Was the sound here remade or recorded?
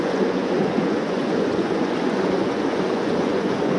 remade